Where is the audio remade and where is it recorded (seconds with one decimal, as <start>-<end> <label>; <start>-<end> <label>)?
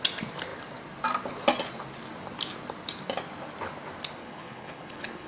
0.0-4.2 recorded; 4.2-5.3 remade